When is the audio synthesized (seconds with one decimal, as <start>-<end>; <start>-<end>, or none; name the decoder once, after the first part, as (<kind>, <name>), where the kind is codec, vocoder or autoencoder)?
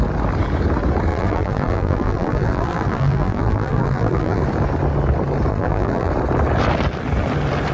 1.1-4.4 (vocoder, BigVGAN v2); 5.5-6.1